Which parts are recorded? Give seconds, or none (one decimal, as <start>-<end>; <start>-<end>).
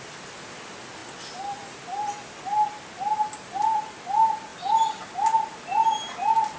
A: 0.0-6.6